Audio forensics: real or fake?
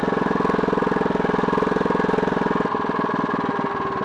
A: real